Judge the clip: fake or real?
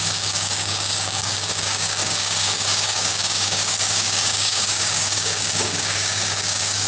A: fake